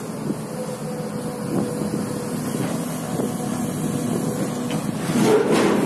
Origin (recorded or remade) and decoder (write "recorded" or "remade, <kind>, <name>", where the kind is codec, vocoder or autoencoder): recorded